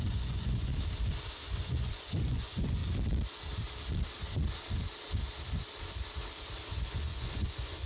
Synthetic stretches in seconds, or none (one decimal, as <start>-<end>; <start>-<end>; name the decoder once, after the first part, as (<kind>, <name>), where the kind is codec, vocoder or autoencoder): 0.0-0.7 (vocoder, Vocos); 1.3-2.8; 6.9-7.9